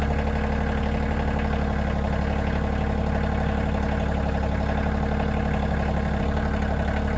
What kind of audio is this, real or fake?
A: real